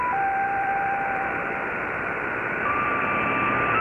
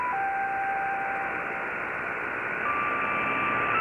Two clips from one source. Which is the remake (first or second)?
first